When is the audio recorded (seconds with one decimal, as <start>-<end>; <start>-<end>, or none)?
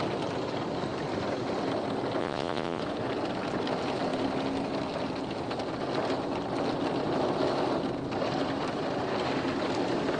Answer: 0.0-2.2; 2.8-10.2